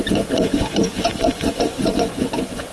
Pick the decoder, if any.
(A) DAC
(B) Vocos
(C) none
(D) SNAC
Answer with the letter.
B